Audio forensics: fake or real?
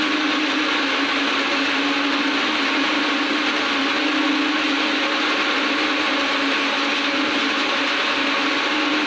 real